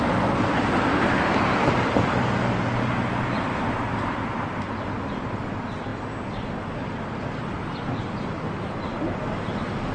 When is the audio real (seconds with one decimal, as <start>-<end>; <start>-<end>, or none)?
0.0-9.9